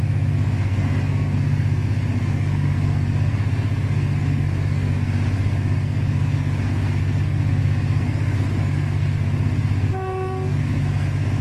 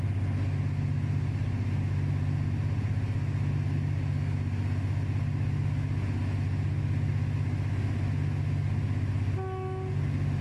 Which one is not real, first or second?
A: first